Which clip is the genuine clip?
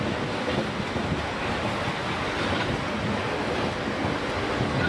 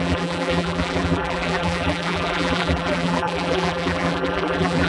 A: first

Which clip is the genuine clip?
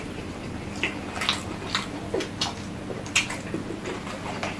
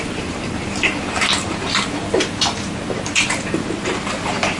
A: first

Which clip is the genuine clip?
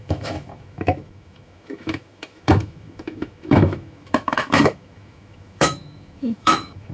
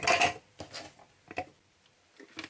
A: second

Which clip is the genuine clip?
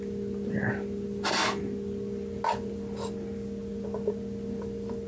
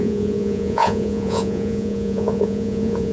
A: first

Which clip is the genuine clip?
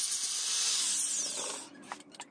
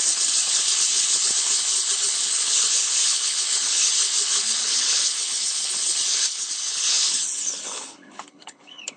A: first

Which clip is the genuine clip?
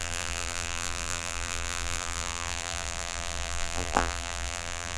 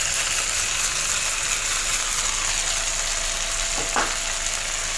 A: second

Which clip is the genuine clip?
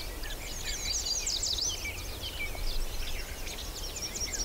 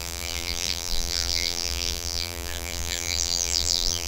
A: first